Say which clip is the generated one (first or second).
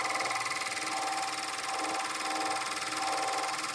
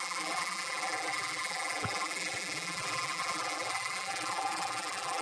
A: second